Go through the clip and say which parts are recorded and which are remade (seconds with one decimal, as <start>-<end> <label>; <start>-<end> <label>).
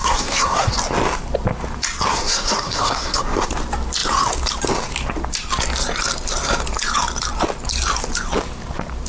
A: 0.0-0.7 remade; 0.7-2.1 recorded; 2.1-3.5 remade; 3.5-9.1 recorded